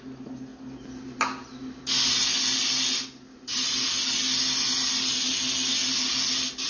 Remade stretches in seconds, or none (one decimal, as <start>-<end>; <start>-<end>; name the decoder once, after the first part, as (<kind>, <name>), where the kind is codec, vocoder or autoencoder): none